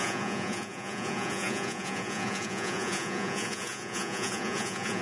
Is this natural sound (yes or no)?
no